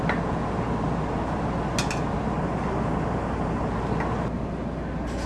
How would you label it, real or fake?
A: real